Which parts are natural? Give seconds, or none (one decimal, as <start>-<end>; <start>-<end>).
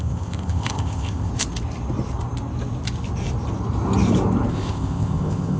1.3-4.5